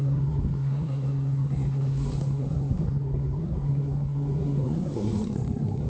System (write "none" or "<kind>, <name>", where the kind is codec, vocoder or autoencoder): codec, SNAC